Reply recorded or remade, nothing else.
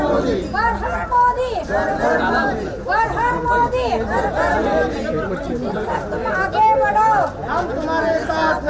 recorded